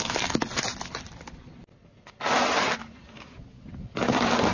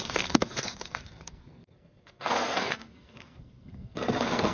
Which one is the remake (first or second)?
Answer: second